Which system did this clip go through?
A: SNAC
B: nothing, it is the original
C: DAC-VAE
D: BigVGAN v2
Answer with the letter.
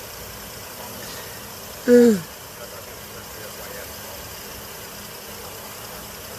B